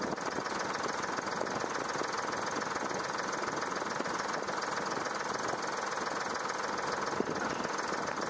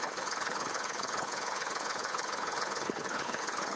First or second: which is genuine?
first